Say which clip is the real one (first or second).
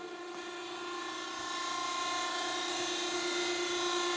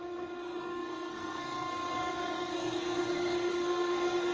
first